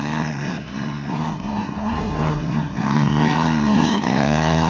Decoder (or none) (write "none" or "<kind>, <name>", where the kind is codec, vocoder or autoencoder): codec, SNAC